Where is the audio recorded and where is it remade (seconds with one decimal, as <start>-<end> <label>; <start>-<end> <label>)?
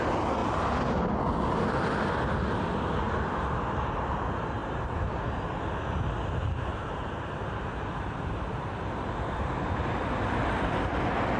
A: 0.0-4.6 recorded; 4.6-5.4 remade; 5.4-6.7 recorded; 6.7-8.3 remade; 8.3-11.4 recorded